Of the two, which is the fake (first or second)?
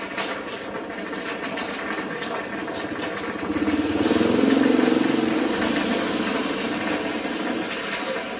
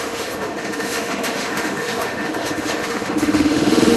second